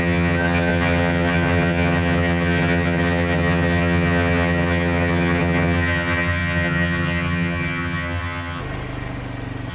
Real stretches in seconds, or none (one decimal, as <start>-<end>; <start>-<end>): 8.6-9.7